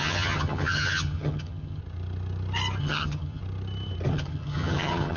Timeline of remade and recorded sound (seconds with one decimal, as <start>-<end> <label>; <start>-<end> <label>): 0.0-1.8 remade; 1.8-2.8 recorded; 2.8-3.4 remade; 3.4-4.1 recorded; 4.1-5.2 remade